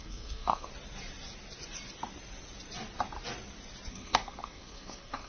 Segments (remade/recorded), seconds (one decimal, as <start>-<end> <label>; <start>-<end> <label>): 0.0-0.7 remade; 0.7-3.9 recorded; 3.9-5.3 remade